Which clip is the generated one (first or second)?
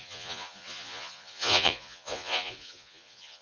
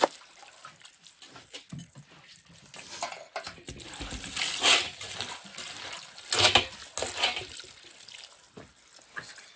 first